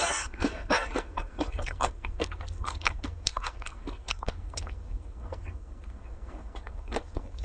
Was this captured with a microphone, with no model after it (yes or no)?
no